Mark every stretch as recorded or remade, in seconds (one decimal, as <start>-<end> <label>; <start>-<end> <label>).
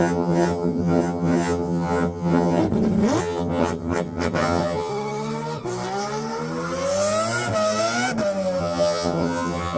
0.0-2.6 remade; 2.6-3.2 recorded; 3.2-4.9 remade; 4.9-8.6 recorded; 8.6-9.8 remade